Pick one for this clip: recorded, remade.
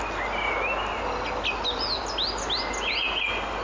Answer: recorded